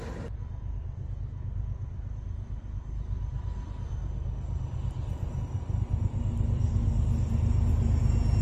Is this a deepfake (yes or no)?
no